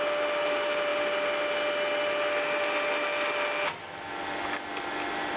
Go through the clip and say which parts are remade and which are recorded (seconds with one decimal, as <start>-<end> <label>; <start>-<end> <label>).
0.0-5.4 recorded